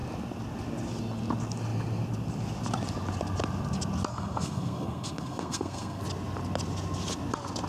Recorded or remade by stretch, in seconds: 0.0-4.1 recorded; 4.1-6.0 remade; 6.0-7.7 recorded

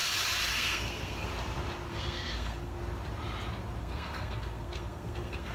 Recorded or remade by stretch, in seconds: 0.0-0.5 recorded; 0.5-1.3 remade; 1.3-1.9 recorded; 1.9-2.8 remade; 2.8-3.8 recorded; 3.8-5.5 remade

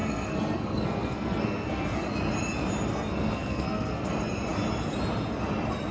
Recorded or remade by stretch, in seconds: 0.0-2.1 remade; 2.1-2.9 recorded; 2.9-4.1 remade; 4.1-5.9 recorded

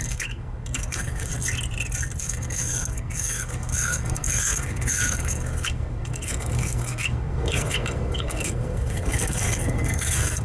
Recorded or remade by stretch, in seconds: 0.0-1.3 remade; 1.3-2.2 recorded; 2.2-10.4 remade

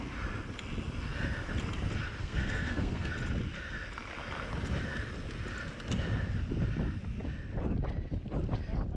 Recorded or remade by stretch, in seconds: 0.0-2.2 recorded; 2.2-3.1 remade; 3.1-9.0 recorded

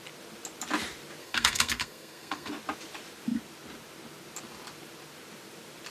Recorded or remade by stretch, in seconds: 0.0-1.2 recorded; 1.2-2.5 remade; 2.5-5.9 recorded

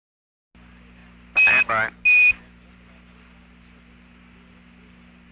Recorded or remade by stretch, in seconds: 0.0-5.3 recorded

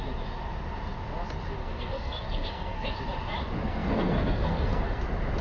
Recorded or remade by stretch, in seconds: 0.0-1.6 recorded; 1.6-2.9 remade; 2.9-3.6 recorded; 3.6-5.0 remade; 5.0-5.4 recorded